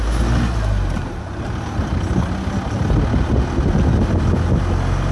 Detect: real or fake real